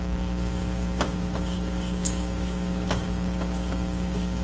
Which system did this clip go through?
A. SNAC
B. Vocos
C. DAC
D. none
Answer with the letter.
C